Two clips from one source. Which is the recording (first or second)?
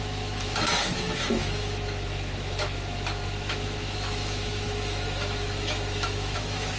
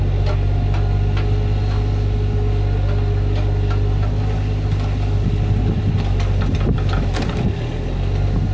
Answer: second